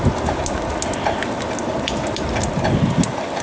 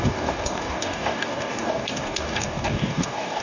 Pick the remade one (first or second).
second